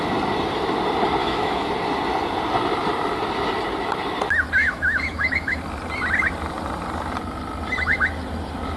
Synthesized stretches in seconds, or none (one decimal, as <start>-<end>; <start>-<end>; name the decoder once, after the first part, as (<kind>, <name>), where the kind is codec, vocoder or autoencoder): 1.2-1.7 (autoencoder, DAC-VAE); 4.6-5.6